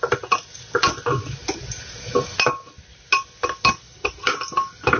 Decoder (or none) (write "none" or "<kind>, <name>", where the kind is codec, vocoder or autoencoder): none